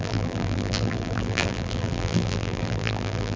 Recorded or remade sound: remade